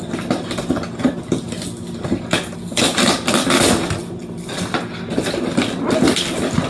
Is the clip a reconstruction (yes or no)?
no